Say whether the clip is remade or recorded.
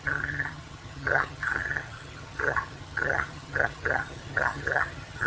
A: remade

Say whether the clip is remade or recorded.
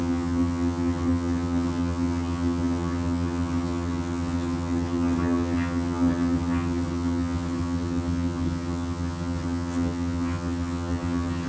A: remade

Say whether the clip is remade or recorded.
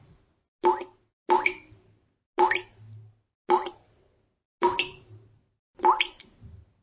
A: recorded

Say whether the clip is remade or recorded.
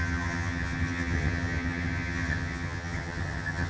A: remade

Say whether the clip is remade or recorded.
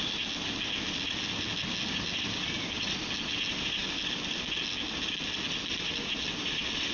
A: recorded